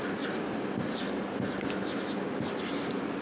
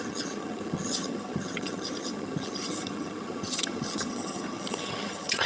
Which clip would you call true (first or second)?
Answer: first